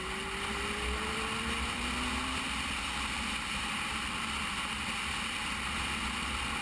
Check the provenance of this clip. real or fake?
real